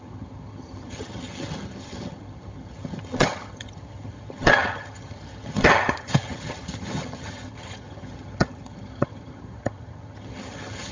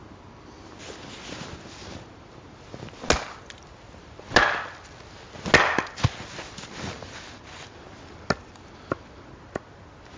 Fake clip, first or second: first